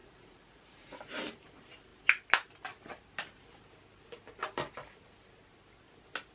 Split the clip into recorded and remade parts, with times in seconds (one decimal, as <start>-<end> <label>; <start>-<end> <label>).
0.0-1.0 remade; 1.0-6.3 recorded